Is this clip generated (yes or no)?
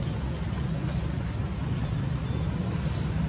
no